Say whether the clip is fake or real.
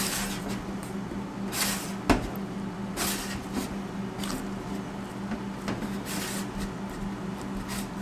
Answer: real